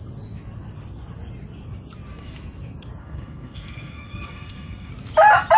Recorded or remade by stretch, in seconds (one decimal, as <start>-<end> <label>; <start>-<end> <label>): 0.0-3.0 recorded; 3.0-4.9 remade; 4.9-5.6 recorded